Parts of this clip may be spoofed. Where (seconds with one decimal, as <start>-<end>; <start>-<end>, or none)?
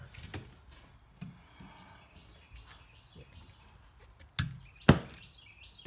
none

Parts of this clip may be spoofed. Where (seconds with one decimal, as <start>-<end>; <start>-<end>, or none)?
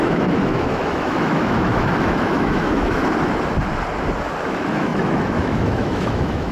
0.0-3.0; 4.4-6.5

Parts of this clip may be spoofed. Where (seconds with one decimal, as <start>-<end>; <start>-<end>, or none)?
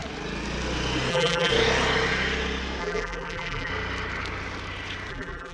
1.1-1.5; 2.8-3.7; 5.1-5.5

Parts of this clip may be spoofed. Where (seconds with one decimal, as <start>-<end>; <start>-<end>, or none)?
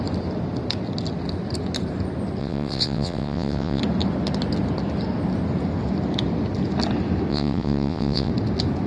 2.4-3.8; 7.3-8.3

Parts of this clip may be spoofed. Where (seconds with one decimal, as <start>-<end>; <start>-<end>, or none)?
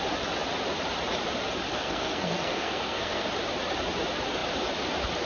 1.7-3.3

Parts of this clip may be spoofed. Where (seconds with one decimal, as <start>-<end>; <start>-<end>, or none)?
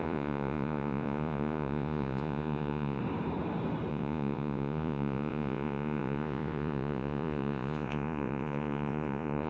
0.0-3.0; 3.9-9.5